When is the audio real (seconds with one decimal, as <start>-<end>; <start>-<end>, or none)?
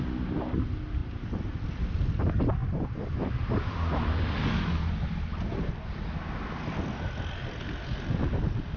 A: 0.0-8.8